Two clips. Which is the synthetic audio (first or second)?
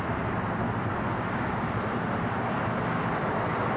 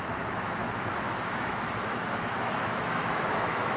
second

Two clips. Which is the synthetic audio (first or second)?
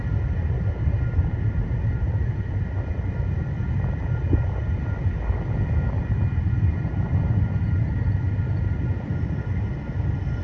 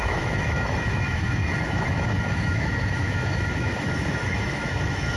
second